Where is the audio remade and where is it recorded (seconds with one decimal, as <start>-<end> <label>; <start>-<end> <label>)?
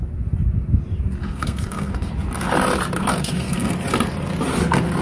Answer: 0.0-1.2 recorded; 1.2-2.1 remade; 2.1-3.0 recorded; 3.0-3.7 remade; 3.7-5.0 recorded